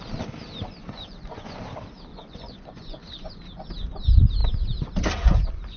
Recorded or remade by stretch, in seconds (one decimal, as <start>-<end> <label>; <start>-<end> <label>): 0.0-0.8 recorded; 0.8-1.6 remade; 1.6-2.1 recorded; 2.1-3.3 remade; 3.3-5.8 recorded